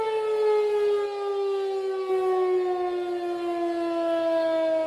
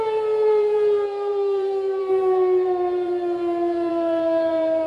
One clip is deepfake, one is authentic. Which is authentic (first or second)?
first